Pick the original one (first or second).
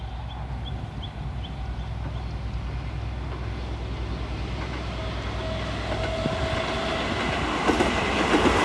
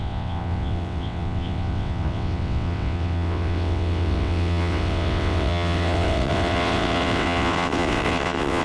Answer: first